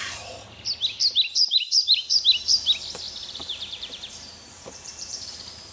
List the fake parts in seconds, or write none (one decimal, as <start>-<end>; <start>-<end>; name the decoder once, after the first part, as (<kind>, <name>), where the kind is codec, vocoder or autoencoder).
1.3-2.2 (vocoder, BigVGAN v2); 3.2-5.3